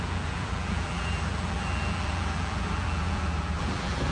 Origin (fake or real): fake